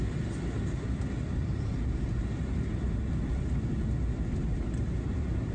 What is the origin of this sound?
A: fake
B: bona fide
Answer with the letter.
B